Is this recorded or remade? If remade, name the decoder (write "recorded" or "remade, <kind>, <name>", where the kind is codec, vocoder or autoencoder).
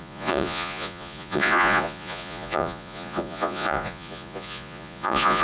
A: remade, vocoder, Vocos